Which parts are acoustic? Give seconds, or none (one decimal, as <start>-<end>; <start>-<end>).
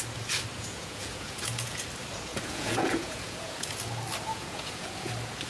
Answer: 0.0-0.5; 1.8-2.3; 3.8-4.3; 5.1-5.5